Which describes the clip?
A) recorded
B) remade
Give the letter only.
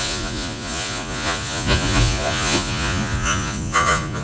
B